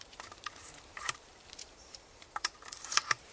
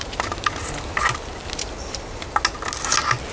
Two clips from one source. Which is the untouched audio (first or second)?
second